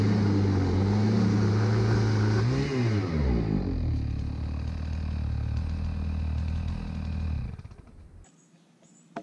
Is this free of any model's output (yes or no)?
yes